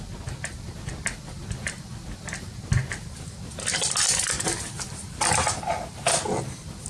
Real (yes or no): yes